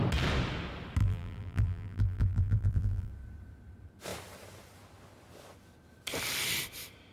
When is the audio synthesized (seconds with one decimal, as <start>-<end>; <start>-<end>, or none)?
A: 1.0-3.1